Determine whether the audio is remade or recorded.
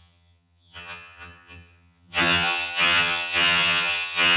remade